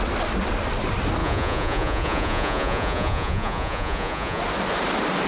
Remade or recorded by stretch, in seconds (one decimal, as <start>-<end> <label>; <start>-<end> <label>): 0.0-1.2 recorded; 1.2-4.4 remade; 4.4-5.3 recorded